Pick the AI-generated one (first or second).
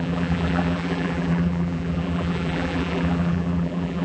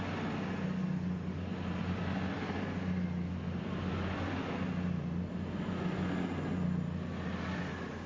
first